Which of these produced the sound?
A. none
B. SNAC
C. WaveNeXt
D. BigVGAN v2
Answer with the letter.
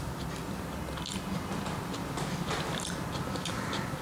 A